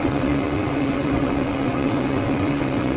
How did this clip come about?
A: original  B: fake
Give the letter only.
B